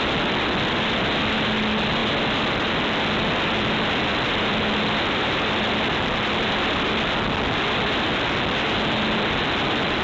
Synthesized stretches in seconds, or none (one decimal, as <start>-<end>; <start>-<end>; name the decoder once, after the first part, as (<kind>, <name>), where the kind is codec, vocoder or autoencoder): none